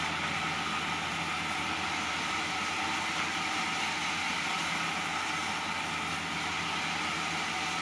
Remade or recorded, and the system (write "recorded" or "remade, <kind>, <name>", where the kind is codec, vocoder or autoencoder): recorded